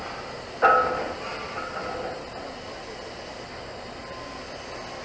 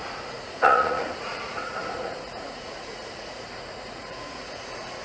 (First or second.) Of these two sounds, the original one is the first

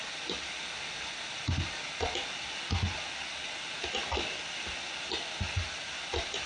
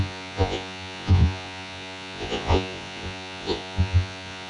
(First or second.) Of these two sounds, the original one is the first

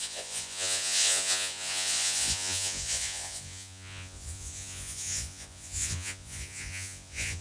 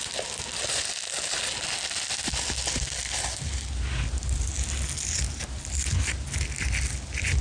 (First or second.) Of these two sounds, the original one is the second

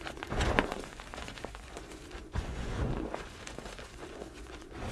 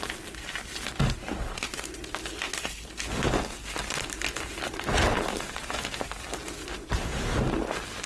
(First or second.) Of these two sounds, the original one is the second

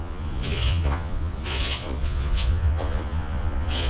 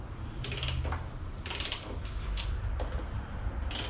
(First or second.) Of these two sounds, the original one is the second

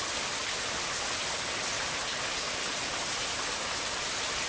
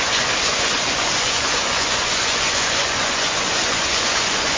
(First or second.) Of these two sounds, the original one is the first